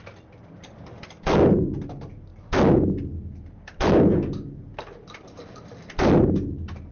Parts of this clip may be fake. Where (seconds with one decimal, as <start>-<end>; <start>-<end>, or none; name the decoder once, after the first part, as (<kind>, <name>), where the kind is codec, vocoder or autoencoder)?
none

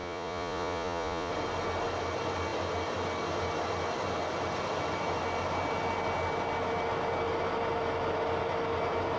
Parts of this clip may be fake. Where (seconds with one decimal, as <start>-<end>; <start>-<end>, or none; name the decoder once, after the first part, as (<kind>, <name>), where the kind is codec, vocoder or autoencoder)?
0.0-1.3 (vocoder, Vocos)

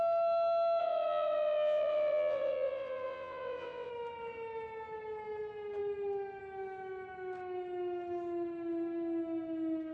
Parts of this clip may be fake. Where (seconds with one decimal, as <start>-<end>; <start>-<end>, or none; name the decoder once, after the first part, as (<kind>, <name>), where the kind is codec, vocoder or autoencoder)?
0.8-3.9 (vocoder, WaveNeXt)

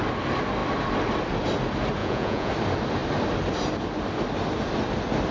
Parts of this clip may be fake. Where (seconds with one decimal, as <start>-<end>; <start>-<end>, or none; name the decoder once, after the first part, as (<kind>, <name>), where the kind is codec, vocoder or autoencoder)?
2.0-2.5 (vocoder, Vocos)

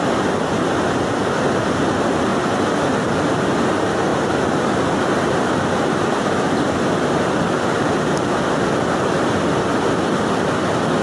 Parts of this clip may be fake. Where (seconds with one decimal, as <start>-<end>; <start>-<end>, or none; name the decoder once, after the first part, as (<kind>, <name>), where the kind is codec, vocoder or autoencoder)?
none